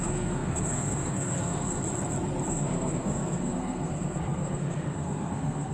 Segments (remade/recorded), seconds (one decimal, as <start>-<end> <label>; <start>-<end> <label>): 0.0-1.8 remade; 1.8-2.5 recorded; 2.5-5.7 remade